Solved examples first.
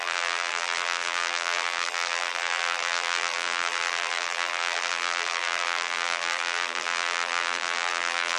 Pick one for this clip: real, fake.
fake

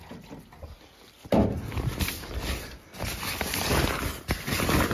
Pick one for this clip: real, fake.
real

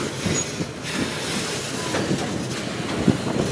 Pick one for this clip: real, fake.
real